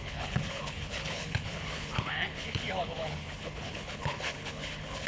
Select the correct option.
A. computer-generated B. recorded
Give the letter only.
A